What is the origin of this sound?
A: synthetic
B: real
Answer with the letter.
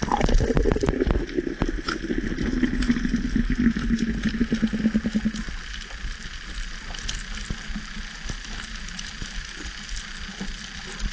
B